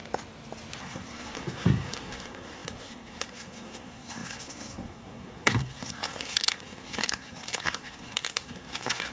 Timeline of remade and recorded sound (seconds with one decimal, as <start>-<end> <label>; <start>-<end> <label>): 0.0-0.8 recorded; 0.8-9.1 remade